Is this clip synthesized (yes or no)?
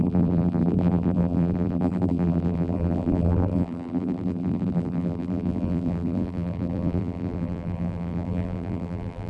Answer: yes